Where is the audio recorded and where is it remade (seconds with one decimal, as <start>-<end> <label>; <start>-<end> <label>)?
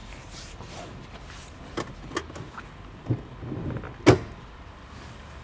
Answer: 0.0-0.8 remade; 0.8-5.4 recorded